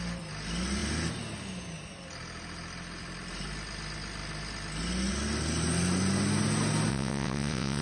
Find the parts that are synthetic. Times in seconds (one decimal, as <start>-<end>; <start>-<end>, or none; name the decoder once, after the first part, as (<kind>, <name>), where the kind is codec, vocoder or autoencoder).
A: 6.9-7.8 (vocoder, WaveNeXt)